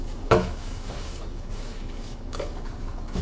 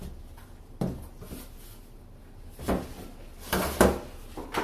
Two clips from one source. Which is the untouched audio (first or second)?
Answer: second